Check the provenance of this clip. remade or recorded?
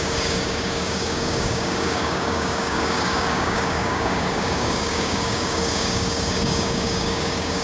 remade